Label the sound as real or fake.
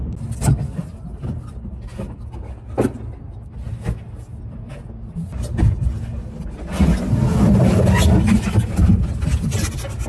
real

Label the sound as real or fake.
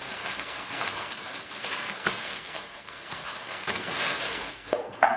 fake